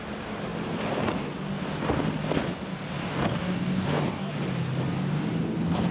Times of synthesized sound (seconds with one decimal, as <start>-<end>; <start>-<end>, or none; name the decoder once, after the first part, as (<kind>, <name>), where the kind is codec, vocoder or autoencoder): 3.0-4.3 (codec, DAC)